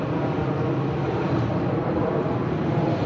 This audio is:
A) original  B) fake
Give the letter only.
A